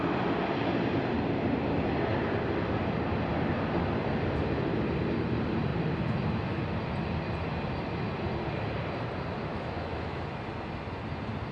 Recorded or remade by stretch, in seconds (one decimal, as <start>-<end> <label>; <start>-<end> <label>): 0.0-9.5 recorded; 9.5-10.2 remade; 10.2-11.5 recorded